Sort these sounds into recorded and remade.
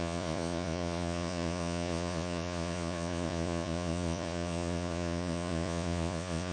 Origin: remade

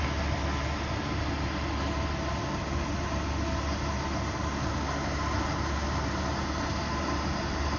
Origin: recorded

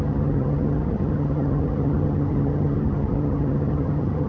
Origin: remade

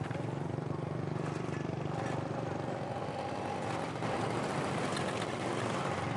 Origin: recorded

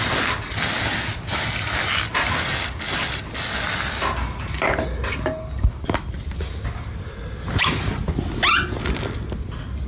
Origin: recorded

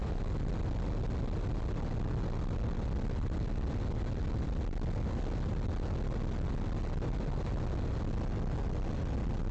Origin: recorded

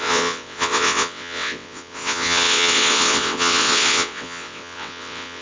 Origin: remade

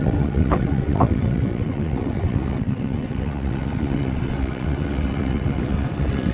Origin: remade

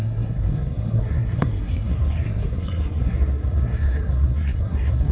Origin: remade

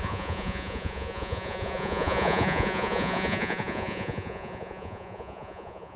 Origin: remade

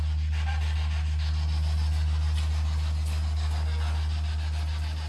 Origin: recorded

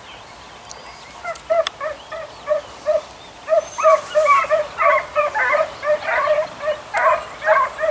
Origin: remade